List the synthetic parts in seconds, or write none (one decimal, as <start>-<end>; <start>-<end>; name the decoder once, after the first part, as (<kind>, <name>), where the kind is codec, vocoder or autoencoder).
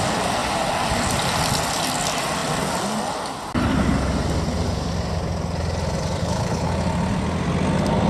6.2-6.7 (codec, HILCodec)